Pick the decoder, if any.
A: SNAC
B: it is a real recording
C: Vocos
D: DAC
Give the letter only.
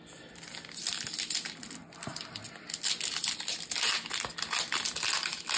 B